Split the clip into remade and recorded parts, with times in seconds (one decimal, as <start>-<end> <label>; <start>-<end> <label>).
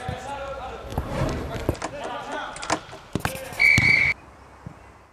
0.0-3.6 recorded; 3.6-4.3 remade; 4.3-5.1 recorded